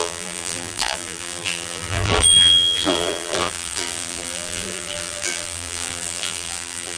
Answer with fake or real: fake